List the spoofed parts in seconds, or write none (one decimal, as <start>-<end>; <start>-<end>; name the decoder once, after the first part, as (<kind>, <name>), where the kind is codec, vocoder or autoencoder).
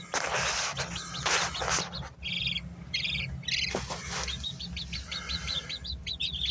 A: 0.7-1.6 (vocoder, BigVGAN v2)